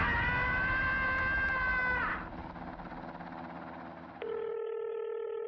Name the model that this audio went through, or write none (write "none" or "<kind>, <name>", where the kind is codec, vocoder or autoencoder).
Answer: none